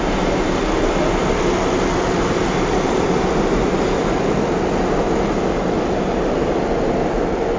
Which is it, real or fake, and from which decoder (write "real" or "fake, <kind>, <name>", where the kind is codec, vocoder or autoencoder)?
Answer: real